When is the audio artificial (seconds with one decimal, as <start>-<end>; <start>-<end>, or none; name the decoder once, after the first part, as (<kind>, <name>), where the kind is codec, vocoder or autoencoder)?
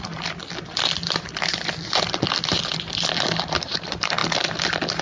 0.0-0.4 (vocoder, BigVGAN v2); 3.4-4.2